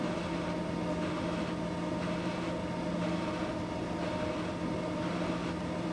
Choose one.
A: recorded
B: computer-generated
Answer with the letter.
A